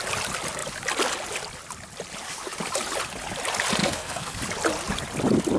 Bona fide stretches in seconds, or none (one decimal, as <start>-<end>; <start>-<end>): 0.0-3.8; 4.4-5.6